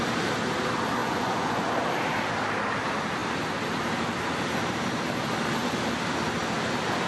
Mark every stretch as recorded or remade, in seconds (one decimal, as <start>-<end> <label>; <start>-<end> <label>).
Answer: 0.0-1.0 recorded; 1.0-1.7 remade; 1.7-7.1 recorded